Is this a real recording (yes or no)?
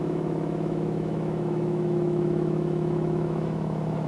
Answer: no